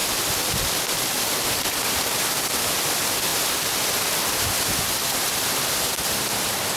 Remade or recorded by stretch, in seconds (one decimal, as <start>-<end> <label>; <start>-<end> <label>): 0.0-6.8 recorded